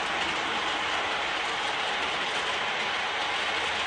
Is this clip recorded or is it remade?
recorded